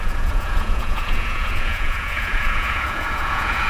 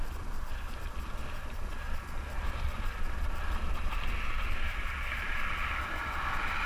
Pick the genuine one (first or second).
second